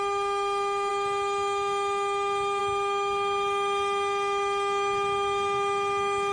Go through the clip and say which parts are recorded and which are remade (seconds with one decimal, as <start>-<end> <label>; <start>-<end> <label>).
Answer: 0.0-6.3 remade